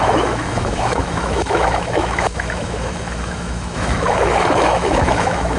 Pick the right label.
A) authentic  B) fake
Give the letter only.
B